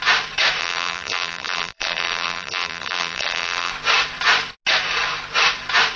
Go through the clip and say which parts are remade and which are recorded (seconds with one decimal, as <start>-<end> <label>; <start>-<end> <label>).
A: 0.0-0.6 recorded; 0.6-3.7 remade; 3.7-6.0 recorded

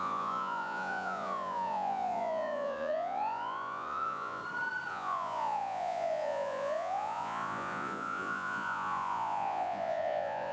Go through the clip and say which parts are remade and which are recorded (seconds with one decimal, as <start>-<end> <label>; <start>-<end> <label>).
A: 0.0-4.4 remade; 4.4-4.9 recorded; 4.9-10.5 remade